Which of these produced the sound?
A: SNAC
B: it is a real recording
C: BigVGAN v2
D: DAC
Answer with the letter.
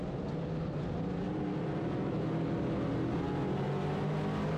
B